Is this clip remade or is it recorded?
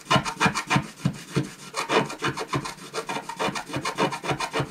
recorded